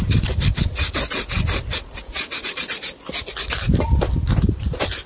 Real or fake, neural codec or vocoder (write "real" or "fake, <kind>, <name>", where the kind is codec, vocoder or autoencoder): real